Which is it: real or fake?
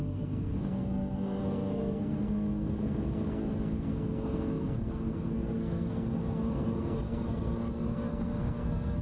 fake